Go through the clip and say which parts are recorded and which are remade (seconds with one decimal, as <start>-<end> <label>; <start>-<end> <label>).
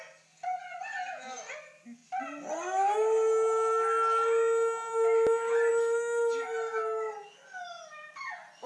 0.0-8.7 recorded